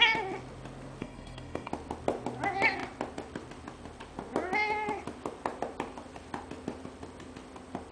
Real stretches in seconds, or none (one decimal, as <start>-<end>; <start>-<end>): 0.0-1.0; 1.7-7.9